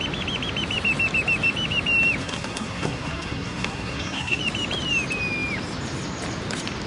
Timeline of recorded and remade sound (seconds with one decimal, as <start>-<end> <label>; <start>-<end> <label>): 0.0-2.2 recorded; 2.2-4.4 remade; 4.4-6.9 recorded